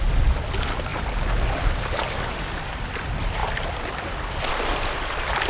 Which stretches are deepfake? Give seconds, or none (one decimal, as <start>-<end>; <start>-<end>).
none